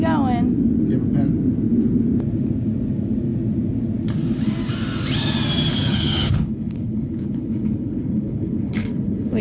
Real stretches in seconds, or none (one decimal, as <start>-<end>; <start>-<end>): 0.0-5.7